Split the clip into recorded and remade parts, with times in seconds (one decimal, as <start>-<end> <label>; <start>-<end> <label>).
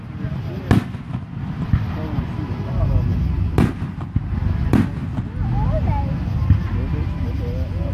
0.0-7.9 recorded